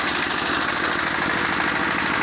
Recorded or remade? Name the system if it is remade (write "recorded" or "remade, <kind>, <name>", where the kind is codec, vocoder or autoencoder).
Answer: recorded